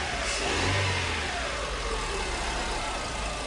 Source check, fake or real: real